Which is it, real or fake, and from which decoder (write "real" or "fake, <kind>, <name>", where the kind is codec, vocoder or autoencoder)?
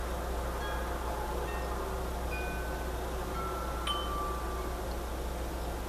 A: real